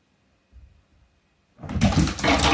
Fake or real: real